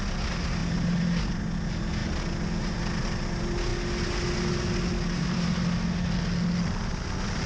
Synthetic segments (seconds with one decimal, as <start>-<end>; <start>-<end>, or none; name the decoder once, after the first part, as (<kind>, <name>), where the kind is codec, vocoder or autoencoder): none